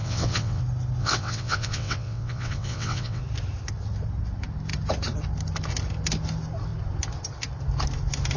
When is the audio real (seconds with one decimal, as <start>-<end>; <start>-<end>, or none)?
0.6-1.0; 3.2-8.4